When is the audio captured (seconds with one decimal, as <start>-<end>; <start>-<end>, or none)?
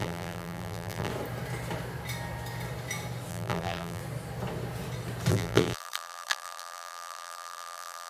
1.1-3.3; 4.0-5.3